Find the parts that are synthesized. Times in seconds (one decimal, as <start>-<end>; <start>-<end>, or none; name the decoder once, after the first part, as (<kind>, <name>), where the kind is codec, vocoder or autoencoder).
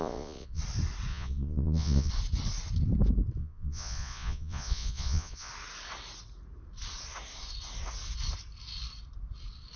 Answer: 0.0-0.6 (vocoder, Vocos); 1.1-2.1; 3.4-5.5